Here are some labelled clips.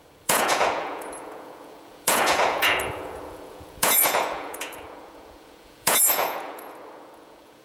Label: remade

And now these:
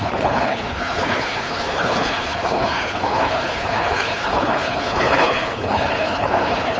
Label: remade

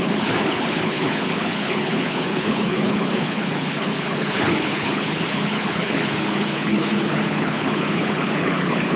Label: remade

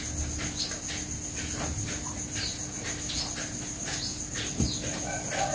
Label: recorded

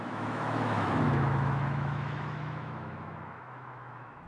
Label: remade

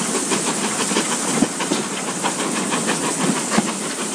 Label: recorded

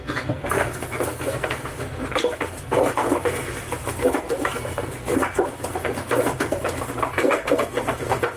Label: remade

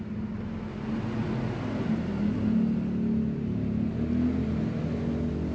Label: recorded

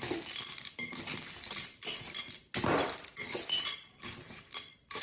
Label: recorded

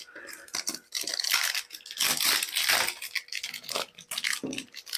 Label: recorded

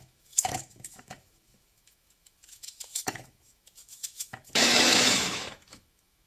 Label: remade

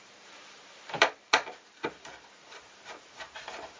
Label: remade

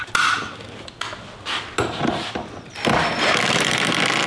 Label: recorded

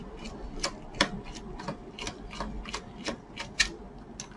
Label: recorded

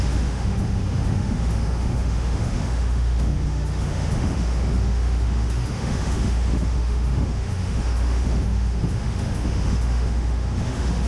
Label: remade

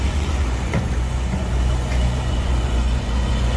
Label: remade